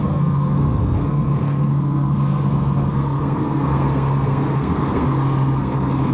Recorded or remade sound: remade